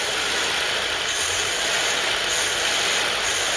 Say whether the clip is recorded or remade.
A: recorded